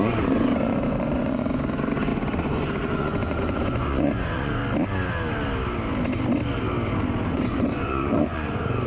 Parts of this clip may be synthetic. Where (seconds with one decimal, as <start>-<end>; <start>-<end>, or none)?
0.0-4.6; 7.3-8.9